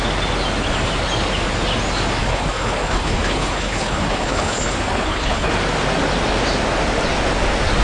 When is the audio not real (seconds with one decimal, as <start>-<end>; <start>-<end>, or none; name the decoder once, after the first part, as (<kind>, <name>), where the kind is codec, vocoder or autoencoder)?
2.2-5.5 (codec, HILCodec)